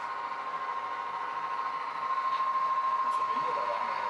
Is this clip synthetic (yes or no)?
no